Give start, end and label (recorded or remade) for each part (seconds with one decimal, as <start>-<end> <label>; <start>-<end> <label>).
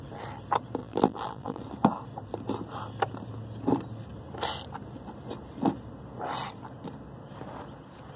0.0-0.8 recorded; 0.8-1.6 remade; 1.6-8.2 recorded